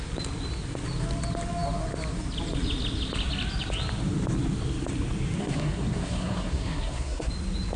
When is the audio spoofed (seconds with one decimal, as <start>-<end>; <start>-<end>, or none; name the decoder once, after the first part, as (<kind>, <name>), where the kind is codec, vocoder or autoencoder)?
5.4-7.3 (codec, SNAC)